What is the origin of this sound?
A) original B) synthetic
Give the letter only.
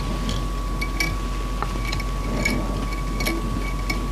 A